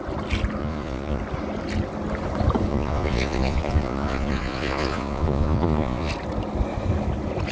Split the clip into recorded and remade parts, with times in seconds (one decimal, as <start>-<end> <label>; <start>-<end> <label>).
0.0-0.6 recorded; 0.6-1.2 remade; 1.2-2.7 recorded; 2.7-6.1 remade; 6.1-7.5 recorded